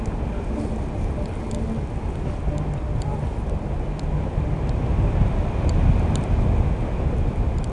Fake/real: real